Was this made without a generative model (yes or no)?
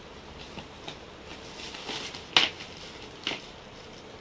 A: yes